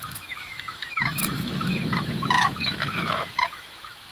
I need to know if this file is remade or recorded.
remade